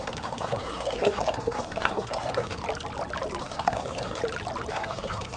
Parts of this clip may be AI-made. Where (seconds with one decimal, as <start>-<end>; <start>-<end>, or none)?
0.0-2.6; 3.4-4.2; 4.7-5.4

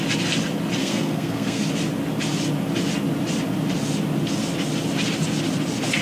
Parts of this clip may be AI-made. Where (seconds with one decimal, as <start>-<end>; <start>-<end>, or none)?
0.8-1.6

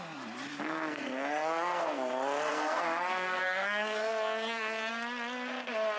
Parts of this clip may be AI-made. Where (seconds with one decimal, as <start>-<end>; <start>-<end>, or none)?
0.5-2.1; 2.5-4.9

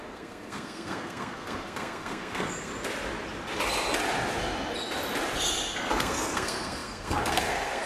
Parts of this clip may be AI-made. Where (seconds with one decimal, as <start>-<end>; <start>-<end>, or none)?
0.0-2.7; 5.8-7.9

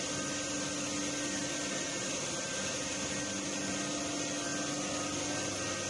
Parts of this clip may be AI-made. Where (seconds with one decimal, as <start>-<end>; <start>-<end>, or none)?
none